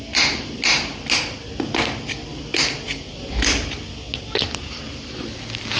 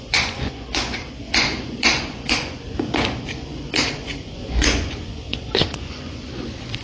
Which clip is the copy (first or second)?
second